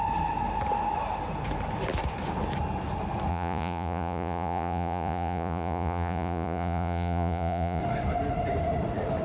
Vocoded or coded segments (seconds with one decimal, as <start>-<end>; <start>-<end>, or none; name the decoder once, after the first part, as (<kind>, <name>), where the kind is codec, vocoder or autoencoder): 3.3-7.8 (vocoder, Vocos)